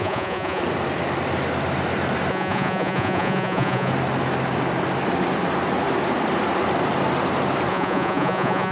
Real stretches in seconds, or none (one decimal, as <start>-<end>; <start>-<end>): 0.6-2.3; 3.9-7.7